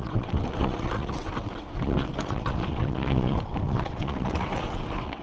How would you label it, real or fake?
fake